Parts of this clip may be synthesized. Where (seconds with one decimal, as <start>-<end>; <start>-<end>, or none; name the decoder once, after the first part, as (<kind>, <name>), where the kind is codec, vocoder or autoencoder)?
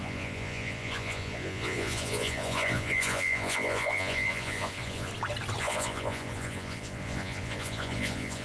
0.0-5.1 (vocoder, Vocos); 5.6-8.4